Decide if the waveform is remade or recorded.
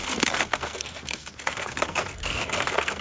remade